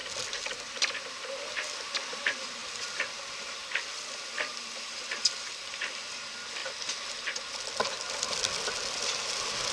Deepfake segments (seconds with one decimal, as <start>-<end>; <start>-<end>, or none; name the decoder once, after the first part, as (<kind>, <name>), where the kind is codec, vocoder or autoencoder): 0.5-6.6 (vocoder, BigVGAN v2); 7.6-9.7